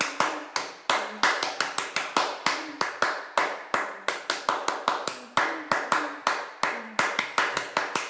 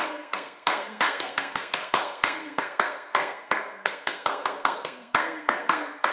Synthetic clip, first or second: second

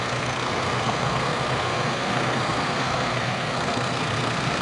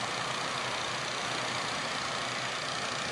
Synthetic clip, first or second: first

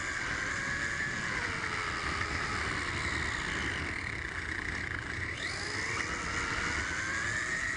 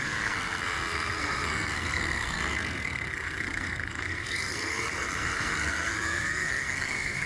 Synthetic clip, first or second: second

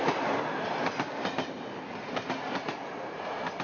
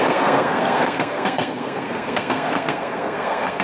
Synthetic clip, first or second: second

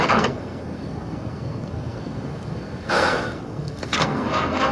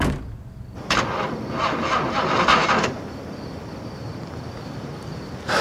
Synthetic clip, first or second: first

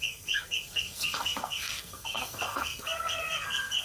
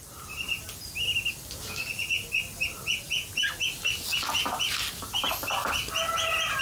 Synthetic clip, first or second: first